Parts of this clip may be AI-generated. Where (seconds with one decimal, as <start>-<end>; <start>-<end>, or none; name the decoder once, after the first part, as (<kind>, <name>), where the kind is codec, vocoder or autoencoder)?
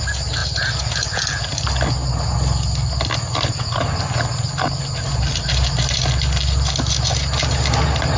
none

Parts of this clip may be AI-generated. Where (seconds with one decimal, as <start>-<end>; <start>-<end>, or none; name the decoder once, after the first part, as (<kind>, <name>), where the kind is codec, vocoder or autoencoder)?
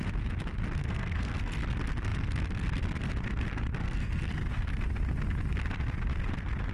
0.8-1.6 (codec, SNAC); 3.8-4.7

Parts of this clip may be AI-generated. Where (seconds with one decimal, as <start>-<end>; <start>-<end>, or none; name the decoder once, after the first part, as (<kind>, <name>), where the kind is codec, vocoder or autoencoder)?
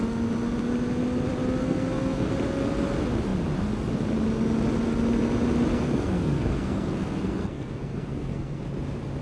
1.6-2.3 (codec, SNAC); 5.7-8.6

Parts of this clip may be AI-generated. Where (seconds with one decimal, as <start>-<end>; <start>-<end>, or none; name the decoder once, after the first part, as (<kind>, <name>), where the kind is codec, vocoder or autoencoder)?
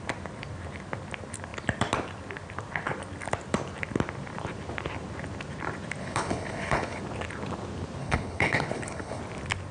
6.0-7.0 (codec, HILCodec); 8.0-9.2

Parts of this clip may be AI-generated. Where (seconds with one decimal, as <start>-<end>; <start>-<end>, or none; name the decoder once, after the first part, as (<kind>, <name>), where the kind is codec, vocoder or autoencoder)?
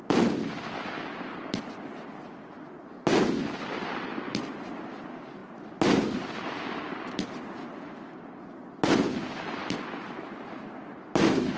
none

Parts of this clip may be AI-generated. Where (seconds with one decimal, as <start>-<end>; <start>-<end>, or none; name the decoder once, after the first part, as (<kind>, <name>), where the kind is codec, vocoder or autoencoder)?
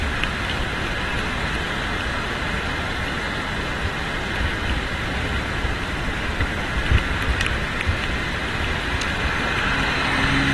2.9-4.0 (vocoder, BigVGAN v2); 7.6-8.8